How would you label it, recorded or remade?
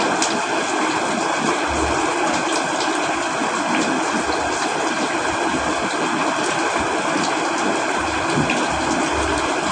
recorded